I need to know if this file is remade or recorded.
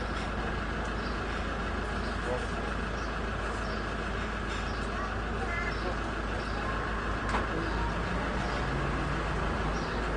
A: recorded